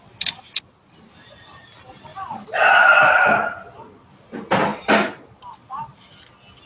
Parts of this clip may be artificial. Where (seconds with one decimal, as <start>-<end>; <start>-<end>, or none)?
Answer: 2.1-3.0; 4.7-5.4